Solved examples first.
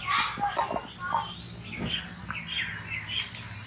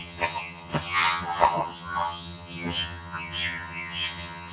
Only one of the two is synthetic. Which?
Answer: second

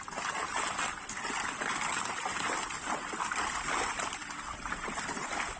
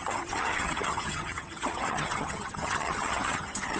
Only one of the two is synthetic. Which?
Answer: second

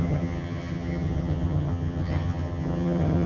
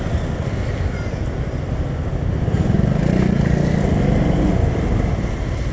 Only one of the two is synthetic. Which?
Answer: first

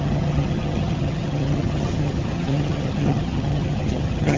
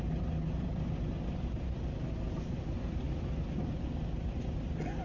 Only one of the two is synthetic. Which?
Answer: first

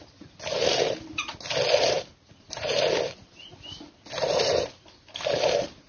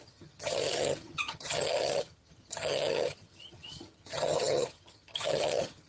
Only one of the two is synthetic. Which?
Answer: second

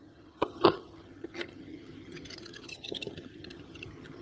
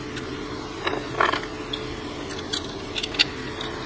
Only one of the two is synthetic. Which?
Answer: first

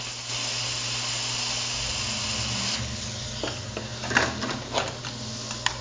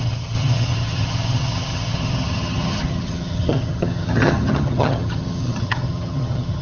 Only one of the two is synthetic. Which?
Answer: second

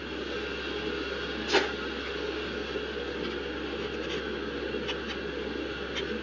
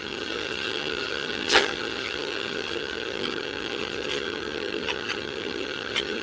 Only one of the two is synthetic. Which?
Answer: second